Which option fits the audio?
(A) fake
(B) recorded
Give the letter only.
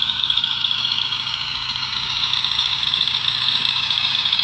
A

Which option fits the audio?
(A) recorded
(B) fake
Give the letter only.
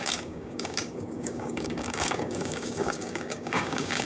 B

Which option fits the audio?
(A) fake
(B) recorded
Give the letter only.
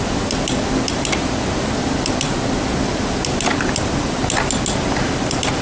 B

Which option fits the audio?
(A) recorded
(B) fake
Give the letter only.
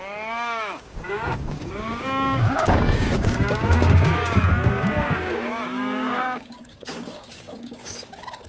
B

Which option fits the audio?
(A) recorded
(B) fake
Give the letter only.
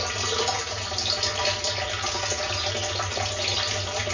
A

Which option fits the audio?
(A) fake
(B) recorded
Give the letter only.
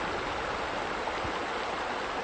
B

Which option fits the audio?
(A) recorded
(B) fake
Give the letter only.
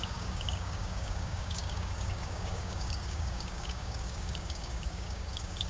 B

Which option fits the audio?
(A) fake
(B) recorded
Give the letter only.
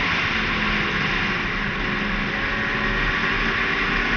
B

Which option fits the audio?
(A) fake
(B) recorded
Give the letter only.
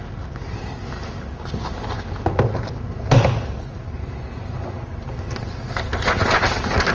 B